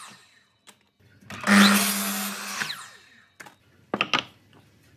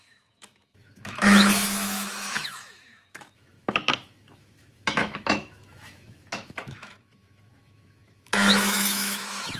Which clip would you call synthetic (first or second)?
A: second